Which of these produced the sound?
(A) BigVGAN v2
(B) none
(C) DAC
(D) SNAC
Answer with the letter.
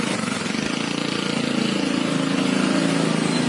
B